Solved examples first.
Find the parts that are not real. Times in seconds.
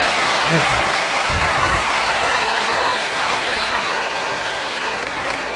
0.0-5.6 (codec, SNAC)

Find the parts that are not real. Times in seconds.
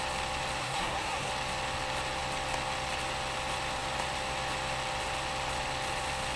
0.6-1.3 (codec, SNAC)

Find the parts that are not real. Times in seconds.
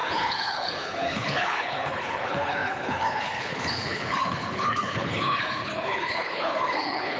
0.0-7.2 (codec, HILCodec)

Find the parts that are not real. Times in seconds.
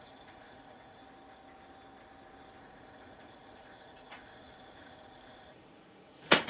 0.0-1.0 (vocoder, Vocos); 2.6-6.5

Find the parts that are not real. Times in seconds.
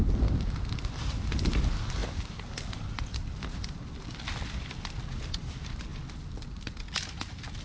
none